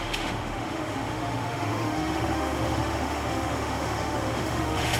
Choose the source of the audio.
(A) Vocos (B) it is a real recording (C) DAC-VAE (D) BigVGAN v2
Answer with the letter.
C